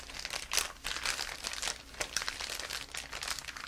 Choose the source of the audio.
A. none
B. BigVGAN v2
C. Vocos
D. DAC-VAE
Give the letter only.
A